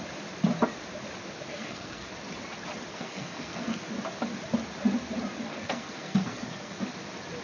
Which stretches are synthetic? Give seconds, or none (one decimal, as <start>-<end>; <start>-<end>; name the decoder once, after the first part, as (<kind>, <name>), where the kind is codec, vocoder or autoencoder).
1.5-2.1 (codec, SNAC); 2.9-3.8; 5.5-6.8

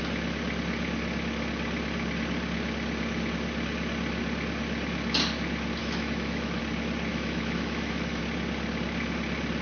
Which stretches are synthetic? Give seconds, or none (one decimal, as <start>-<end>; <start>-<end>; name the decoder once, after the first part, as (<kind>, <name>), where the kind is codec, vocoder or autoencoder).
5.8-6.6 (autoencoder, DAC-VAE); 7.1-8.2